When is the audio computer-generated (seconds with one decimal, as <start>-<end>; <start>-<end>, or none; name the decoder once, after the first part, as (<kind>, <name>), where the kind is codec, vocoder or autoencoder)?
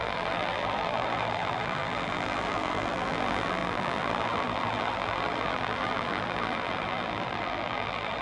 0.0-8.2 (vocoder, BigVGAN v2)